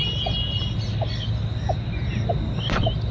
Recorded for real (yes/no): yes